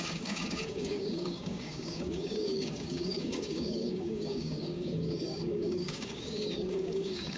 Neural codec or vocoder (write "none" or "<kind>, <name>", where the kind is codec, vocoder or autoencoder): codec, DAC